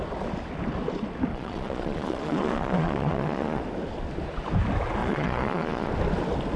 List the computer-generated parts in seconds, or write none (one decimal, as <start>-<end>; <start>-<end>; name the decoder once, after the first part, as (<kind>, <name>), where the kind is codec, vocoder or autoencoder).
1.3-3.6 (vocoder, Vocos); 5.0-5.9